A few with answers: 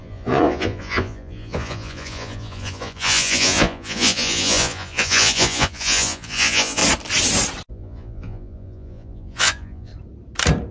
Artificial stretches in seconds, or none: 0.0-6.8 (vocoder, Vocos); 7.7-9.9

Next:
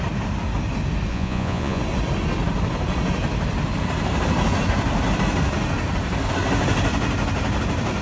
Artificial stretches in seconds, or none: 1.1-1.8 (vocoder, Vocos)